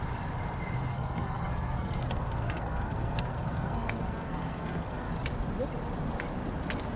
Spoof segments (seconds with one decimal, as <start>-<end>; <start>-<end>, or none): 0.9-5.1